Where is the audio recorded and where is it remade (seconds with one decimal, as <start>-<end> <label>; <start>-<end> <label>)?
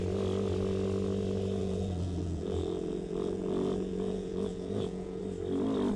0.0-1.6 recorded; 1.6-5.2 remade; 5.2-6.0 recorded